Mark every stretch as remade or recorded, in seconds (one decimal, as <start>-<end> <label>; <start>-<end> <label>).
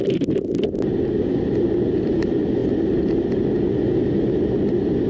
0.0-5.1 recorded